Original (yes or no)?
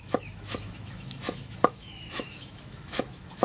no